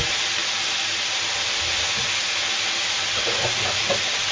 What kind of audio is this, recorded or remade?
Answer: recorded